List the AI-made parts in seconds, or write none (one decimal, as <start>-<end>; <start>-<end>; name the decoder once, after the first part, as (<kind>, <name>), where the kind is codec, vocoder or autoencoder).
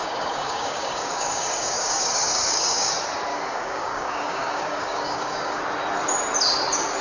0.0-2.9 (codec, DAC); 3.3-5.6